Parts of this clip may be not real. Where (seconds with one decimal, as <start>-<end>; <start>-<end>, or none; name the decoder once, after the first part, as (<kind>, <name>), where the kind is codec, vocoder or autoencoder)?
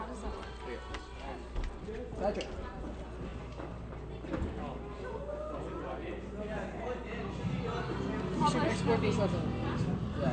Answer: none